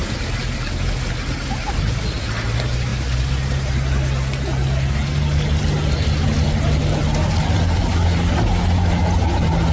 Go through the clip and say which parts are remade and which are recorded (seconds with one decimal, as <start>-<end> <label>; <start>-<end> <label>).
0.0-9.7 recorded